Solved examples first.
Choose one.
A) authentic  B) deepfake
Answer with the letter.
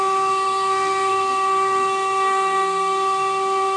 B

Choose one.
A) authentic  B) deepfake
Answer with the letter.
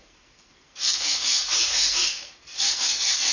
B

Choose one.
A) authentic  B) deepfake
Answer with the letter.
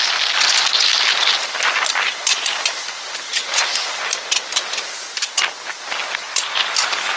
A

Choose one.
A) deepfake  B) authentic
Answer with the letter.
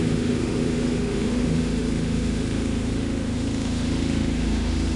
A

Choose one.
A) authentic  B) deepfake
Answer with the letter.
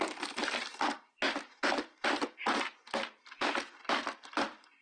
A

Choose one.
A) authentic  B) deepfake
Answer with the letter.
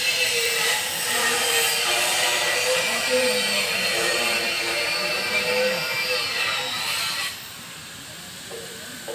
B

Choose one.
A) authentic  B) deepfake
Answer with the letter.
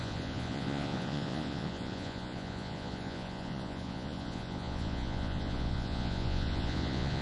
B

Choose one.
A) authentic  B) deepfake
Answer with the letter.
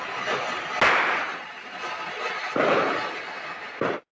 A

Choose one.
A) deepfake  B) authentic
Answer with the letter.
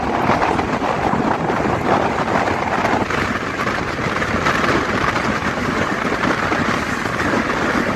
B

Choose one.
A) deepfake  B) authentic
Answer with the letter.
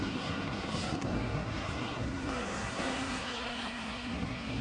A